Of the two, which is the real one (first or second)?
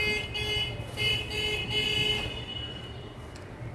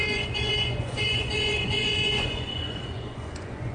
first